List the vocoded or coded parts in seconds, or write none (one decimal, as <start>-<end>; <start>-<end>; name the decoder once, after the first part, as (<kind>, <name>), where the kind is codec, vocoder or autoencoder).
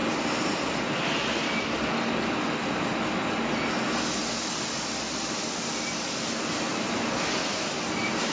none